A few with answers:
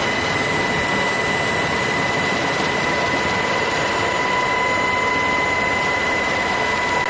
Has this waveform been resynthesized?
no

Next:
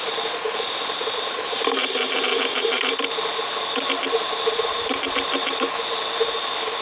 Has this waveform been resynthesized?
no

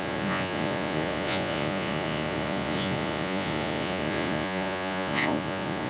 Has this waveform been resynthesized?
yes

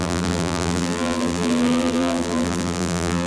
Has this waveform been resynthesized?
yes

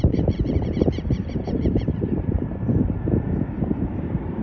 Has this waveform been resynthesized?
yes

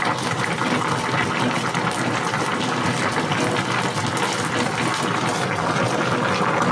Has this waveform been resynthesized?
no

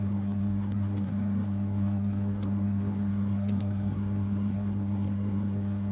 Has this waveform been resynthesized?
yes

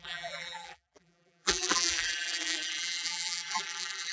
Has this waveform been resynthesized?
yes